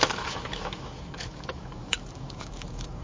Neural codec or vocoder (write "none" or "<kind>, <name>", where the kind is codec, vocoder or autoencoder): autoencoder, DAC-VAE